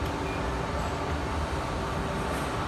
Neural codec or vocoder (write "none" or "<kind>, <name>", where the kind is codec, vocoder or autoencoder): none